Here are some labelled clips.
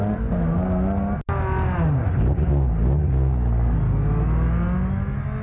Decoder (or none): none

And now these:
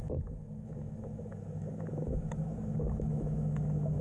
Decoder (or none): autoencoder, DAC-VAE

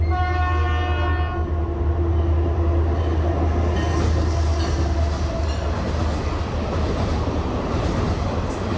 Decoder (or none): none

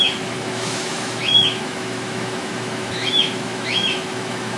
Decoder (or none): autoencoder, DAC-VAE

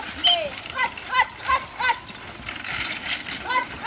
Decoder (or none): none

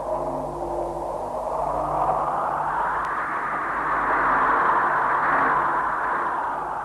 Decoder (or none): none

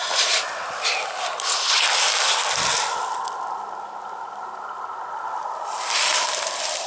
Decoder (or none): none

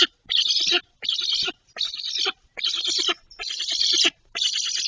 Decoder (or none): none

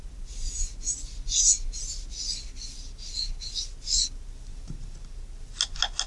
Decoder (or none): none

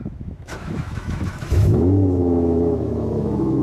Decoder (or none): autoencoder, DAC-VAE